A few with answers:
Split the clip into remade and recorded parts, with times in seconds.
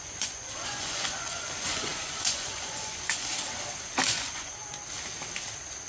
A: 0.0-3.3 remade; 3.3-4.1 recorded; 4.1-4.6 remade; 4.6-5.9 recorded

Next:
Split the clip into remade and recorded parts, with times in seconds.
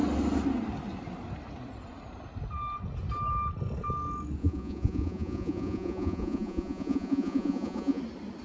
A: 0.0-4.4 recorded; 4.4-8.0 remade; 8.0-8.4 recorded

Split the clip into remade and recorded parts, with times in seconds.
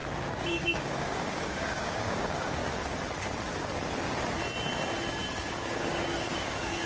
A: 0.0-0.5 recorded; 0.5-2.6 remade; 2.6-5.3 recorded; 5.3-6.9 remade